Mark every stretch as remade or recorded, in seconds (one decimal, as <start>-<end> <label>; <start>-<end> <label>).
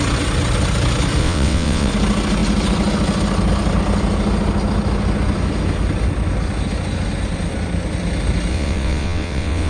0.0-1.2 recorded; 1.2-1.9 remade; 1.9-8.5 recorded; 8.5-9.7 remade